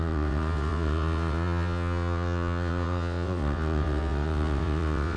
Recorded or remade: remade